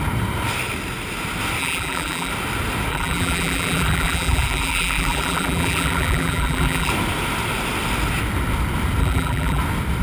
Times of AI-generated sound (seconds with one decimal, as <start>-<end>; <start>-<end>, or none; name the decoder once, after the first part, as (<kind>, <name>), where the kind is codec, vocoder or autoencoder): 1.6-2.3 (vocoder, BigVGAN v2); 2.9-6.9; 9.0-9.6